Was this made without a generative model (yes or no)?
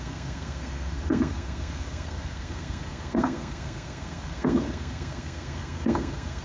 no